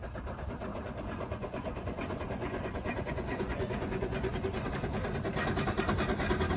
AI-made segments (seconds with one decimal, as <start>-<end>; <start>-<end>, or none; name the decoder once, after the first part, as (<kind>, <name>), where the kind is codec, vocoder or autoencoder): 0.7-4.7 (vocoder, Vocos)

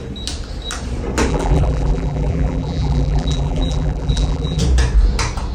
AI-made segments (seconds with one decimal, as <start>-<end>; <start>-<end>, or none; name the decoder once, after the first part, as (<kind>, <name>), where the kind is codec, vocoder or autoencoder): 1.3-4.6 (vocoder, BigVGAN v2)

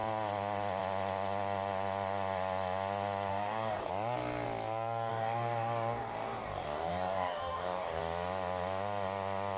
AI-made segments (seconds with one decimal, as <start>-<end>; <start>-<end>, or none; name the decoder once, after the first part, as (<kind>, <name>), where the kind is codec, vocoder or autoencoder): 3.3-3.9 (codec, DAC); 5.1-8.0

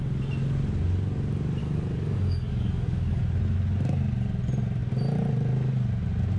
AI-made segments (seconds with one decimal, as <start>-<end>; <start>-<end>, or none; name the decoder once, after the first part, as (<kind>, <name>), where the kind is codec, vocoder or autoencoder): 1.6-3.2 (codec, DAC)